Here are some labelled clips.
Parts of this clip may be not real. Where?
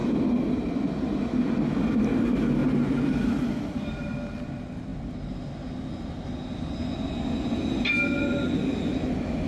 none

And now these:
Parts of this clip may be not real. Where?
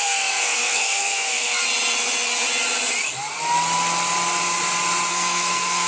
0.0-1.6 (codec, SNAC); 5.1-5.9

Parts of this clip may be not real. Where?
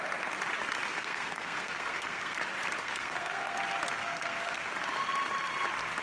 0.9-2.4 (codec, SNAC); 2.8-3.6; 4.0-4.7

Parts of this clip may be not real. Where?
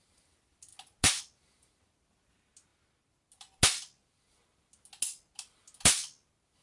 none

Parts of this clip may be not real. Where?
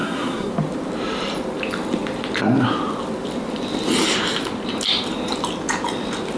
0.0-0.5 (codec, SNAC)